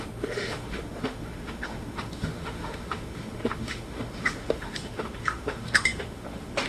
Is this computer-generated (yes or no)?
yes